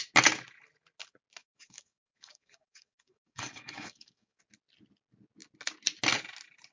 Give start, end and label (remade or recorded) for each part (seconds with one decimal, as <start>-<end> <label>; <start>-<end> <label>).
0.0-1.4 recorded; 1.4-4.4 remade; 4.4-6.7 recorded